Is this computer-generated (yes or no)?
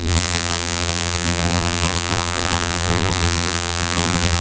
yes